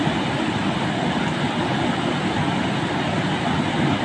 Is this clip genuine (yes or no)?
yes